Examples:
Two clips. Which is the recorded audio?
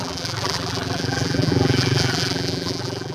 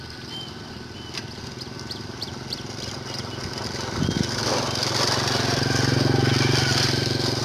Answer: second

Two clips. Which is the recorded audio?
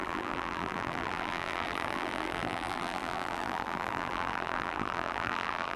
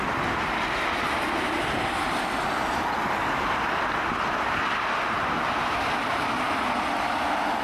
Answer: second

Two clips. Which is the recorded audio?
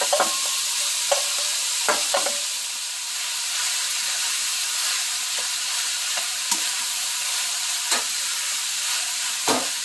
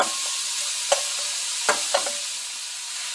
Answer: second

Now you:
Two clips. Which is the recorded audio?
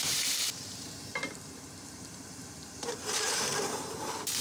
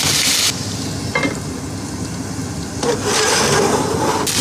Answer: second